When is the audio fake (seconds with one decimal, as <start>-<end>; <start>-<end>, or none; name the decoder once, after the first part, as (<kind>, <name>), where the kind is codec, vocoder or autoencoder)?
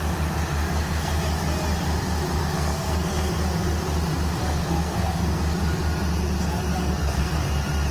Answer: 0.6-1.2 (codec, SNAC); 2.4-3.3; 4.4-5.4; 6.8-7.4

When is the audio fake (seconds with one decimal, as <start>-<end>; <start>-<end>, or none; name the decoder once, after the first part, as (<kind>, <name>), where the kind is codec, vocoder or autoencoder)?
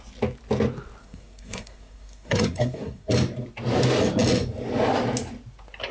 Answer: 1.0-3.1 (codec, SNAC)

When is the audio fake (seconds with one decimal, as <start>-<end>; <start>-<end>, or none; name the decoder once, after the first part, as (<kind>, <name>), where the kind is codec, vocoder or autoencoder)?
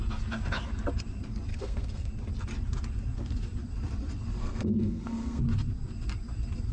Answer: 1.5-2.1 (codec, SNAC); 4.4-5.4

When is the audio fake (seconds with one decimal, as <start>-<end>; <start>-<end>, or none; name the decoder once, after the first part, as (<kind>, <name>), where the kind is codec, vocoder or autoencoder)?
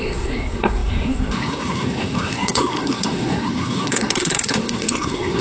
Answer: 0.0-5.4 (codec, SNAC)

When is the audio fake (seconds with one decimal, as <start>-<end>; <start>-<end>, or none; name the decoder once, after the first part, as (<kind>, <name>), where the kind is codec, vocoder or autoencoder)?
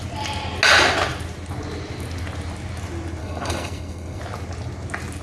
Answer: 3.2-4.2 (codec, SNAC)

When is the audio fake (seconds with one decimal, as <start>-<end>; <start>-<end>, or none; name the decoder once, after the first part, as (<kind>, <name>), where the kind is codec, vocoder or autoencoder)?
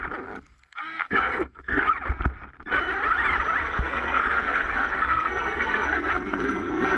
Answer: 0.5-1.9 (codec, SNAC); 3.6-7.0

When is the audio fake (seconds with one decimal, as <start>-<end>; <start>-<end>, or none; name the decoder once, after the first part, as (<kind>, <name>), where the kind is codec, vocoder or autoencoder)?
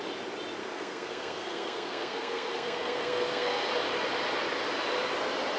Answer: 0.6-3.7 (codec, SNAC)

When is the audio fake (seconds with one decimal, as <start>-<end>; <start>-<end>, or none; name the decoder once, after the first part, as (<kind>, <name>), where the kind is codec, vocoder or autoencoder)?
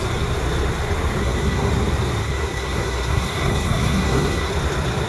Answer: 1.2-1.7 (codec, SNAC); 2.2-4.5